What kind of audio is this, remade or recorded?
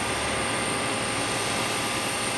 recorded